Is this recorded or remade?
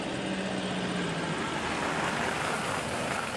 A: recorded